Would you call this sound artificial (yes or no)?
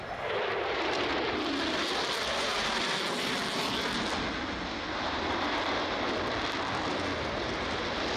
no